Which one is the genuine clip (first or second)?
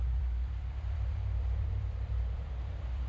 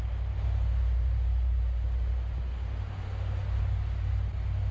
second